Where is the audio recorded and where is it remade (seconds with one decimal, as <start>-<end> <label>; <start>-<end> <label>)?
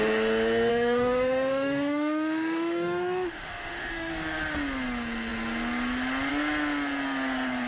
0.0-0.7 recorded; 0.7-4.1 remade; 4.1-7.7 recorded